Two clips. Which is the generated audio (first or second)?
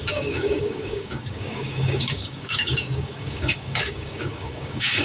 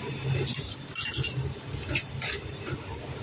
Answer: first